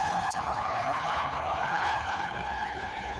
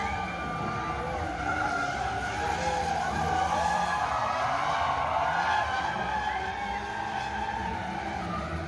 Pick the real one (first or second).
second